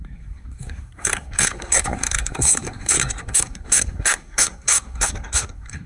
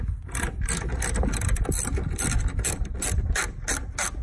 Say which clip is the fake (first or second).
first